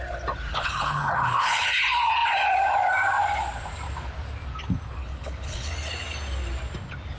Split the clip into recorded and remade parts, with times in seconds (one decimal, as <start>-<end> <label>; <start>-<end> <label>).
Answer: 0.0-0.5 recorded; 0.5-1.7 remade; 1.7-5.0 recorded; 5.0-5.7 remade; 5.7-7.2 recorded

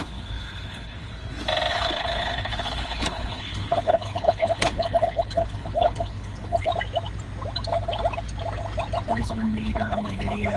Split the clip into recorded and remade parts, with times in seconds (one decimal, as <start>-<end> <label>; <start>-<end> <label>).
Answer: 0.0-1.1 remade; 1.1-1.7 recorded; 1.7-6.7 remade; 6.7-9.1 recorded; 9.1-10.6 remade